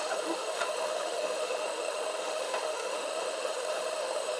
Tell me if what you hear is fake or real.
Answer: fake